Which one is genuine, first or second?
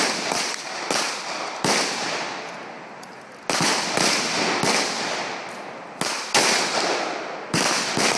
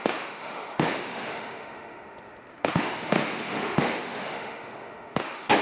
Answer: first